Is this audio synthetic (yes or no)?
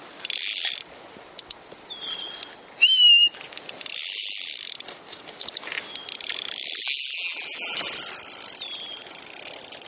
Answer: no